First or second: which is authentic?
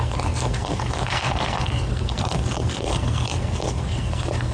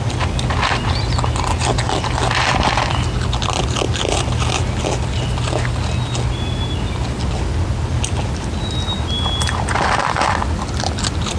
second